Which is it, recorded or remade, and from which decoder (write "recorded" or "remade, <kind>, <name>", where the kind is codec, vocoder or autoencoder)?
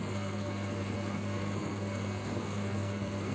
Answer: remade, codec, SNAC